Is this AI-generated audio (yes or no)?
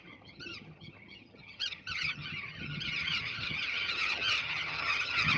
yes